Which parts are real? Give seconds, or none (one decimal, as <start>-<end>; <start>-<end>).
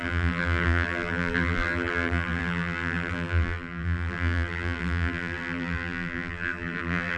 none